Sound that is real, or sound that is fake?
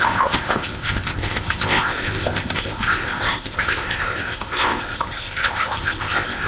fake